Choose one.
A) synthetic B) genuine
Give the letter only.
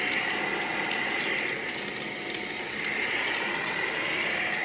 B